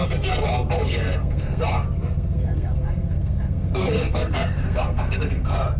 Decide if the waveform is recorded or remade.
remade